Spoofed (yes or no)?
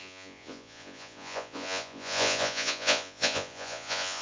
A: yes